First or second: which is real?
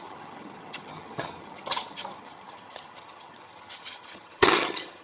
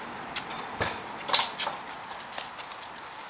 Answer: second